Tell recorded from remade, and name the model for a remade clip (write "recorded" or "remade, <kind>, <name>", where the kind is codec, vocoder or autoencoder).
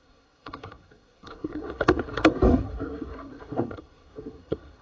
remade, codec, SNAC